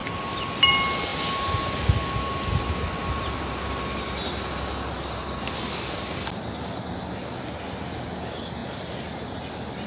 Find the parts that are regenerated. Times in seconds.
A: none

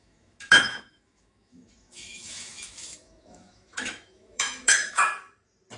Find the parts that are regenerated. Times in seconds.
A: 0.0-5.1 (autoencoder, DAC-VAE)

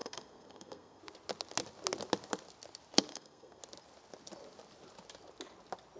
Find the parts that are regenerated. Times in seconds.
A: 0.0-1.0 (codec, SNAC); 3.1-3.6

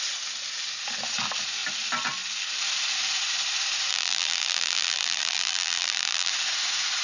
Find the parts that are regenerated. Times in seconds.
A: 3.9-6.3 (vocoder, BigVGAN v2)

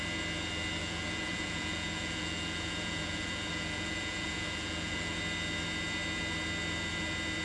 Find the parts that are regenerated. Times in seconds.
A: 0.8-5.2 (vocoder, Vocos)

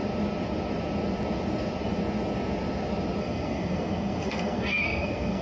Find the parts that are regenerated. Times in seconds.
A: 3.2-5.4 (codec, SNAC)

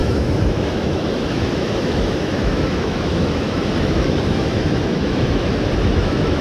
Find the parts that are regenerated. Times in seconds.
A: 0.0-6.4 (autoencoder, DAC-VAE)

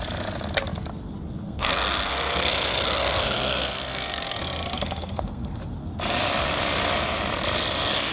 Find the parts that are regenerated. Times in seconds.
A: 1.4-5.6 (codec, SNAC)